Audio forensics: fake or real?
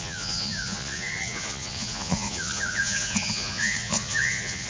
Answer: fake